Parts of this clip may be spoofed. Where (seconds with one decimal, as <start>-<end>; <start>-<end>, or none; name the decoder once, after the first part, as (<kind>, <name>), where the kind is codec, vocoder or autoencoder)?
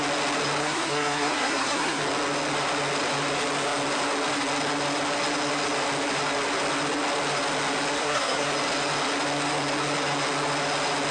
0.6-2.0 (codec, SNAC); 8.0-8.5